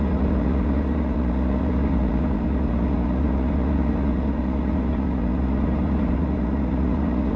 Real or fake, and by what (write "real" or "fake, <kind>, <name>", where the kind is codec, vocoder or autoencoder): fake, vocoder, Vocos